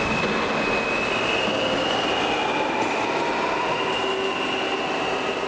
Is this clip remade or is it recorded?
recorded